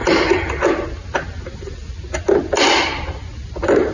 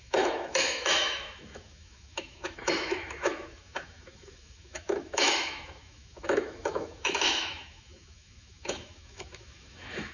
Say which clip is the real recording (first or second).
first